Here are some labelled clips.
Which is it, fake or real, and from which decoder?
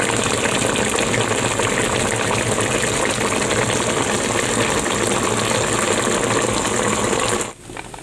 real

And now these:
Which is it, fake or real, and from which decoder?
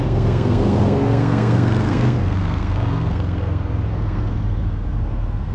fake, codec, SNAC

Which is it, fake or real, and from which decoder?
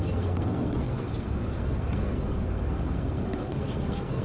fake, codec, SNAC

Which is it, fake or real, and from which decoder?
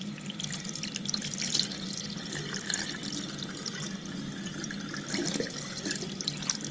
real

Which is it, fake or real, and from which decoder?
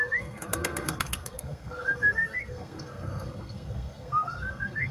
fake, codec, SNAC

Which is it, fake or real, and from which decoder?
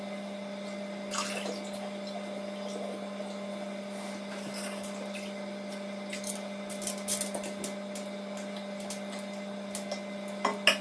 real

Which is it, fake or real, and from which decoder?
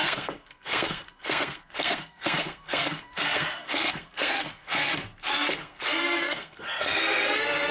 fake, codec, SNAC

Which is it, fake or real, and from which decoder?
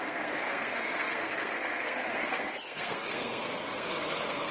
fake, codec, SNAC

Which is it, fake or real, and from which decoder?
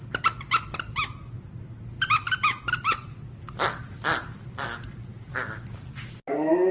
real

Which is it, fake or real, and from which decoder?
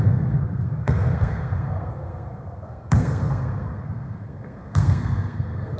fake, codec, SNAC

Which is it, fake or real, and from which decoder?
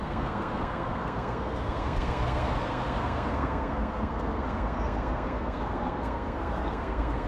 fake, codec, SNAC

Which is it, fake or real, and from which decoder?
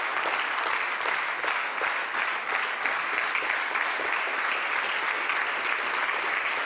real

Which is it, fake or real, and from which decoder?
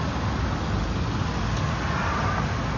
real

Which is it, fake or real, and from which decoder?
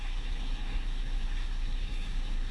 fake, codec, SNAC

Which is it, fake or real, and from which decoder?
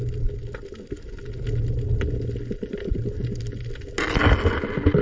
real